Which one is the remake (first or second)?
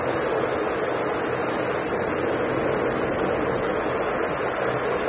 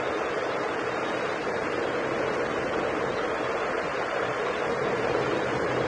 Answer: second